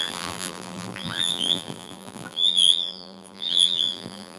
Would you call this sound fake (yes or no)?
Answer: yes